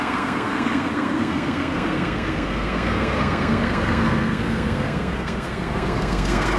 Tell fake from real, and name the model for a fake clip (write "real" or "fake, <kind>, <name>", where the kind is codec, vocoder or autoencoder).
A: fake, codec, SNAC